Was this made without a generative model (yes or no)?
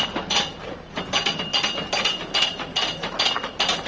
yes